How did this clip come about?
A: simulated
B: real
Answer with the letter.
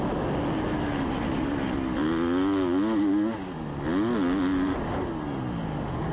B